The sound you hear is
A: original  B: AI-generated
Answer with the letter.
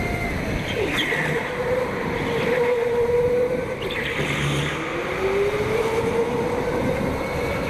A